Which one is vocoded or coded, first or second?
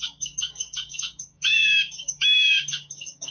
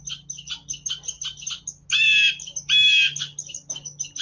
first